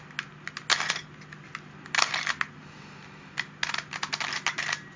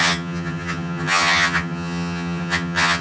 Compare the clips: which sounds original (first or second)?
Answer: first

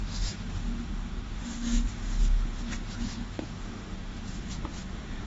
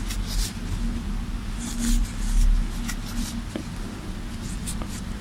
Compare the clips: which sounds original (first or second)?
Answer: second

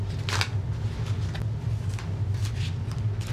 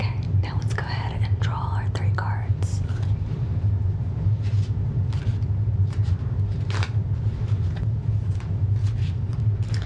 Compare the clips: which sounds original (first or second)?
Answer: first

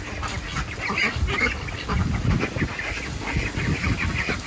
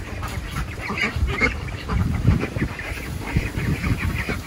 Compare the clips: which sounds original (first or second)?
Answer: first